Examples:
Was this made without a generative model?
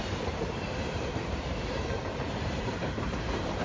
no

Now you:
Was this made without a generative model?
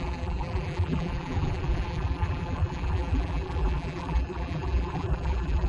no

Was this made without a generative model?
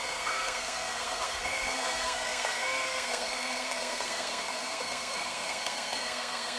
no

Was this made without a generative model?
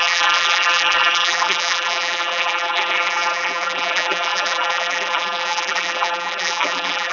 no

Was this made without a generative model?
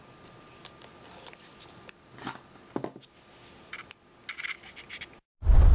yes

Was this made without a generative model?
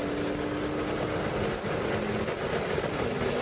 yes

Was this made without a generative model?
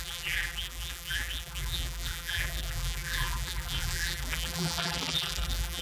no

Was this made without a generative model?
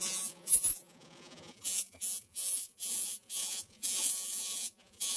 no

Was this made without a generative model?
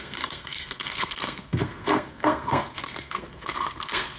no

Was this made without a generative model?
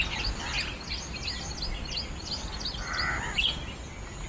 yes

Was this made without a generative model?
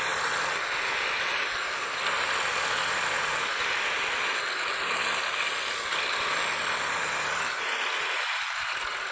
no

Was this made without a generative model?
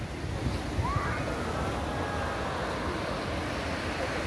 yes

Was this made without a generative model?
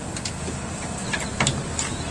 yes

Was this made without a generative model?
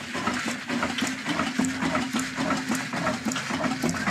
yes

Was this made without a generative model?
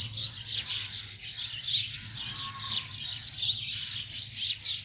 yes